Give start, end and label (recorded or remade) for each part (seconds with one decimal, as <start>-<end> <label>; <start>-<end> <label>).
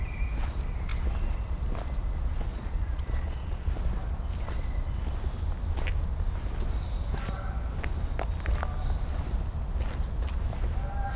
0.0-2.5 recorded; 2.5-3.7 remade; 3.7-11.2 recorded